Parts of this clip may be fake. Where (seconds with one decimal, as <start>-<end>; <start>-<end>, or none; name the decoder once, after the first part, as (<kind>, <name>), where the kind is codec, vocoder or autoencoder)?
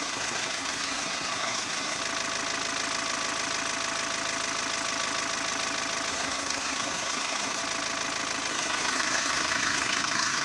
0.0-2.0 (codec, SNAC); 6.1-7.6; 8.5-10.4